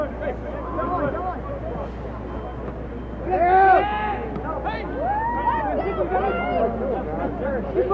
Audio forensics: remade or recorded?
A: recorded